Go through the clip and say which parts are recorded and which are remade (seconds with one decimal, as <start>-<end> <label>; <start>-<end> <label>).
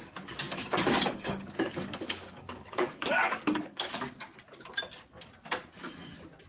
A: 0.0-3.9 remade; 3.9-6.5 recorded